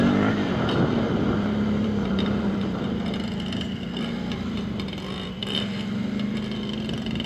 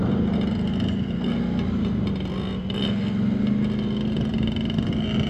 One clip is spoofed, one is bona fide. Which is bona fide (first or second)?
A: second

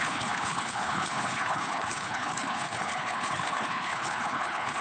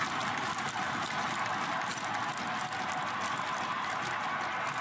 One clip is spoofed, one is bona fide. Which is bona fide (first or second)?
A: second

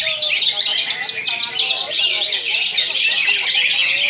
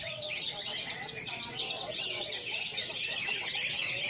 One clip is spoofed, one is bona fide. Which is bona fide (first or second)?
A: first